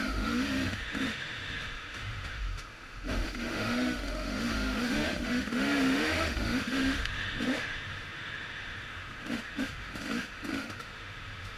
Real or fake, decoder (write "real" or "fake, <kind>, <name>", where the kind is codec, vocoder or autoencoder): fake, autoencoder, DAC-VAE